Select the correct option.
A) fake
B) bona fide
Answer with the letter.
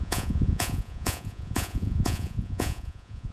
A